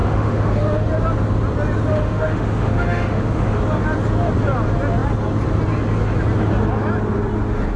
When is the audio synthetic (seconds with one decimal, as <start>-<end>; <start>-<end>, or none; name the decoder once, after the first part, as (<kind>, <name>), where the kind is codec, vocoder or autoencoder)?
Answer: 0.0-0.9 (autoencoder, DAC-VAE); 1.9-3.6